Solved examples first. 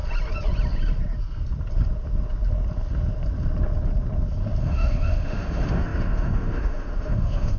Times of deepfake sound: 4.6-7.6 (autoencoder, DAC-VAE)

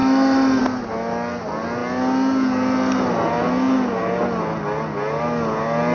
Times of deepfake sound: 0.0-0.6 (autoencoder, DAC-VAE)

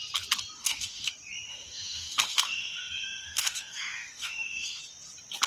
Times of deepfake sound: 0.6-1.1 (autoencoder, DAC-VAE); 1.5-4.8

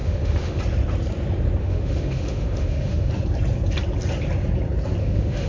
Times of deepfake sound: 0.0-0.6 (autoencoder, DAC-VAE); 1.6-3.1; 5.0-5.5

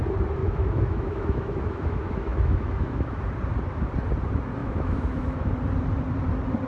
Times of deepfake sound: 0.4-3.2 (autoencoder, DAC-VAE); 4.6-5.5

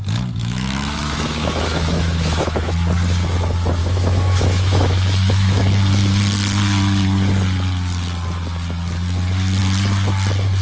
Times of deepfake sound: 0.4-2.7 (autoencoder, DAC-VAE); 3.8-5.6

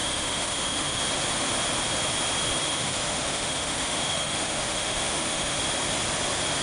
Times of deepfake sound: 0.0-1.0 (autoencoder, DAC-VAE); 2.7-5.6

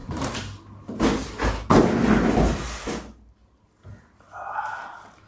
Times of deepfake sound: none